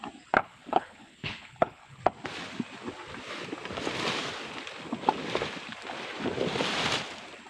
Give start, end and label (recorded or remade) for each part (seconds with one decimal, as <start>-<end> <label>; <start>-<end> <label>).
0.0-0.4 recorded; 0.4-2.0 remade; 2.0-7.5 recorded